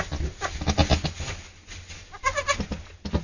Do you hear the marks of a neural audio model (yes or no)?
no